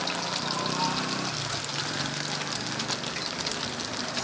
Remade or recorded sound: recorded